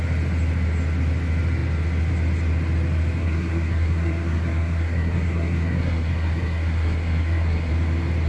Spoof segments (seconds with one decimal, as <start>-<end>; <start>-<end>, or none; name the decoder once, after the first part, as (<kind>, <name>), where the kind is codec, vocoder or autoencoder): 3.2-7.7 (codec, SNAC)